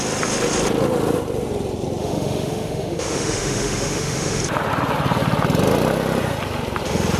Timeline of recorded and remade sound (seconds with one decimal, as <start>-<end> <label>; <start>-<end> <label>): 0.0-2.0 recorded; 2.0-4.4 remade; 4.4-7.2 recorded